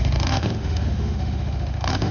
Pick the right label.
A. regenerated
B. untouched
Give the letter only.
A